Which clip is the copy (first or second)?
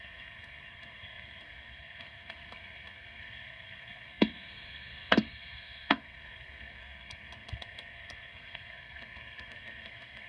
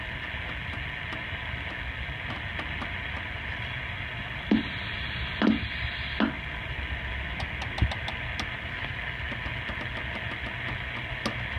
first